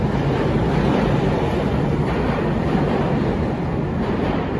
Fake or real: real